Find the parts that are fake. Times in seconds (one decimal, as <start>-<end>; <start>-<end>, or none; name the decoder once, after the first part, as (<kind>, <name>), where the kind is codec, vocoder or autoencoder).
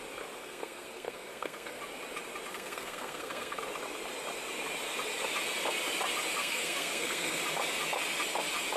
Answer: 0.4-1.8 (codec, SNAC); 2.5-3.6; 6.4-7.4